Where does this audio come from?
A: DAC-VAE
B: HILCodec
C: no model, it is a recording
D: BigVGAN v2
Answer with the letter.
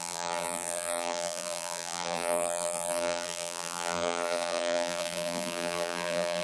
D